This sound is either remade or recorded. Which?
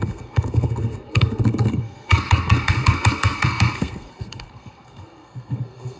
remade